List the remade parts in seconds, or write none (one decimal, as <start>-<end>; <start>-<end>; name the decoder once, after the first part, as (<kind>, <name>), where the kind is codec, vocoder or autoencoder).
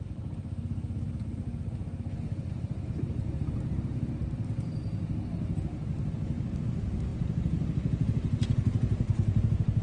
7.1-9.8 (vocoder, BigVGAN v2)